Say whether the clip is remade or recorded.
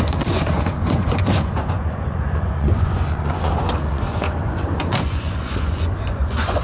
remade